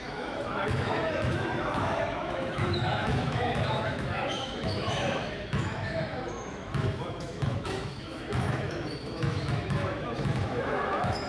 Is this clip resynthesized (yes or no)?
yes